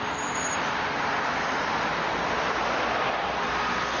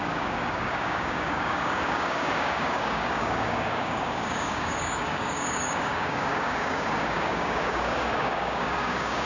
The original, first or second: first